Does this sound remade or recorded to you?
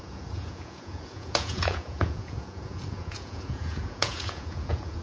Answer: remade